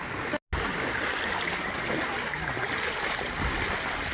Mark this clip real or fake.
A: real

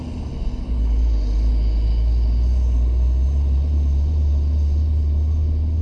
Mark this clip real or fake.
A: real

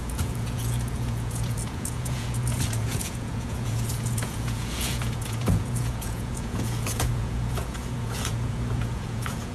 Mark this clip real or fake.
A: fake